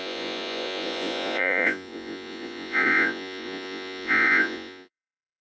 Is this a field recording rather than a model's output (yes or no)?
no